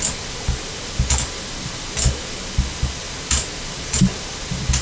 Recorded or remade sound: recorded